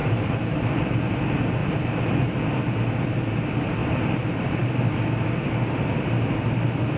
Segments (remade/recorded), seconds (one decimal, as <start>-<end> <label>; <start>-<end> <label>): 0.0-0.8 remade; 0.8-1.6 recorded; 1.6-2.6 remade; 2.6-3.8 recorded; 3.8-4.8 remade; 4.8-7.0 recorded